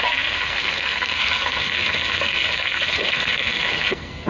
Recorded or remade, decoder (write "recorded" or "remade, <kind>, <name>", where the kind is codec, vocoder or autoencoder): remade, codec, SNAC